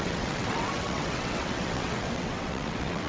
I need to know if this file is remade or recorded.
remade